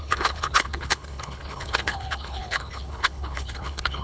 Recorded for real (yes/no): no